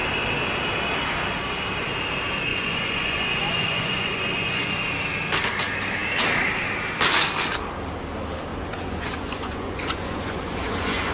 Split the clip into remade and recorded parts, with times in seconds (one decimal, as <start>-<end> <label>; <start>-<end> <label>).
0.0-2.5 recorded; 2.5-4.7 remade; 4.7-8.5 recorded; 8.5-11.1 remade